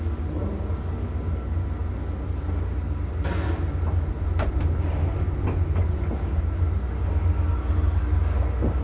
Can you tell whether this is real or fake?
real